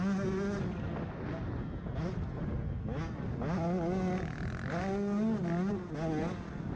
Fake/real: real